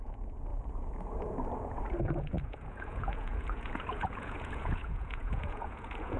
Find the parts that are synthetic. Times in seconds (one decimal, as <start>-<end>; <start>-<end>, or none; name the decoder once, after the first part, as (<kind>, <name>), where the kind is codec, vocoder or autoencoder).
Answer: 0.0-0.5 (vocoder, Vocos); 2.0-6.2